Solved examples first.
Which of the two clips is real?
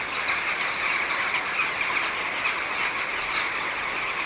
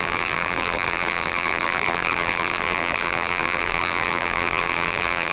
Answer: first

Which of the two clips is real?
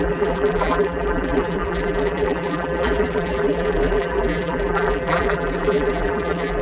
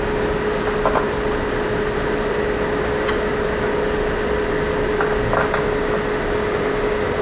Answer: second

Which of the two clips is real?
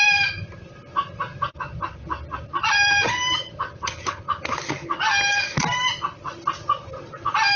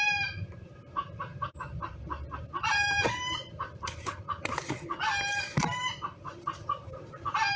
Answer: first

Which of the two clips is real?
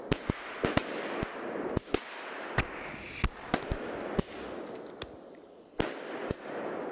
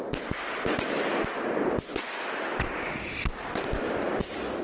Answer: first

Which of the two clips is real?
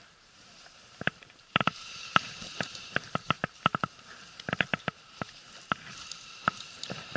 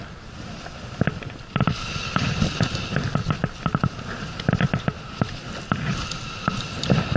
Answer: second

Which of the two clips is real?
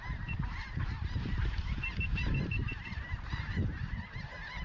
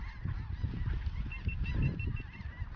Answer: second